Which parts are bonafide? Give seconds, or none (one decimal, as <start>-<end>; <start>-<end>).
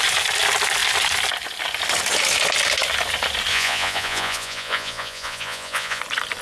0.0-3.5; 6.0-6.4